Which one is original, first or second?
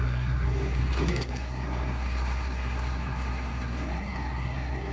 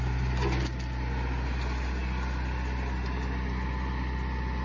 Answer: second